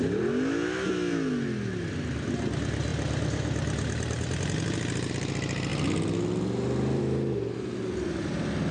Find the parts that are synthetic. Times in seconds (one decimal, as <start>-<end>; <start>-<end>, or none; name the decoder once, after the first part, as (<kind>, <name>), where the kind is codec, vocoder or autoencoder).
none